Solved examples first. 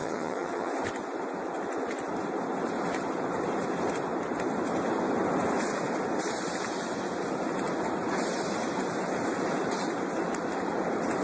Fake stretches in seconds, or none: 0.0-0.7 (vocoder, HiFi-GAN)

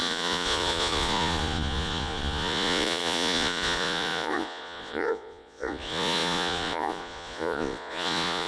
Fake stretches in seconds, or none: 0.0-8.5 (vocoder, Vocos)

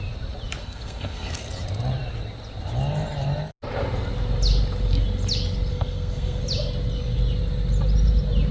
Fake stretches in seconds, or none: 0.6-1.4 (codec, SNAC); 5.7-6.4

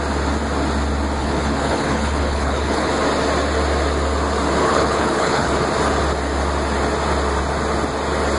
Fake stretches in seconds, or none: 1.2-2.9 (codec, HILCodec); 4.6-5.5

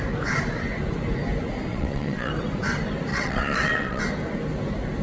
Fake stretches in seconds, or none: 1.7-2.3 (vocoder, WaveNeXt); 3.1-4.0

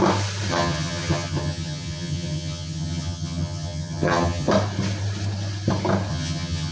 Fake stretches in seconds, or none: 0.5-4.5 (vocoder, HiFi-GAN); 6.1-6.7